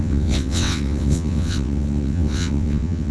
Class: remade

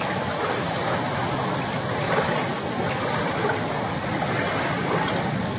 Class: recorded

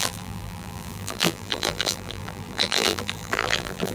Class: remade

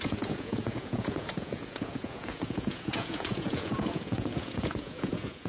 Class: remade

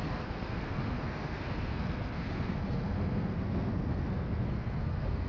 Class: remade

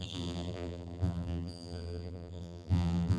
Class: remade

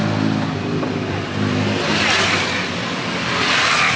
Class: recorded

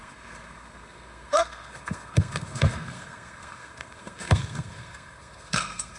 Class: remade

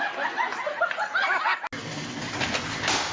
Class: recorded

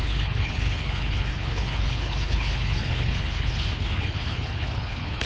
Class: remade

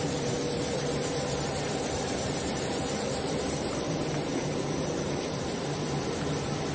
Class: remade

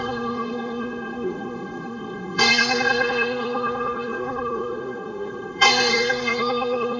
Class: remade